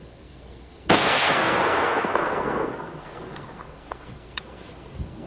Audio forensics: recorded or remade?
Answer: remade